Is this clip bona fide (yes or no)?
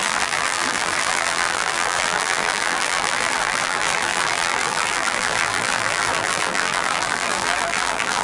no